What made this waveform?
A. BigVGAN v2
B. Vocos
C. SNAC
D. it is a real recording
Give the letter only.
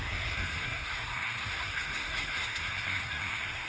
C